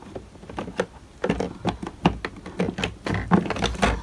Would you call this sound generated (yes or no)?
no